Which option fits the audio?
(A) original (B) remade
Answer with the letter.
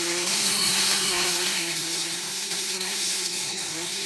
B